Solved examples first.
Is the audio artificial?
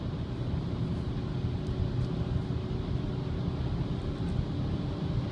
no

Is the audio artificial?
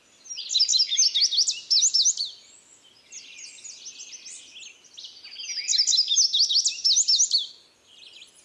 no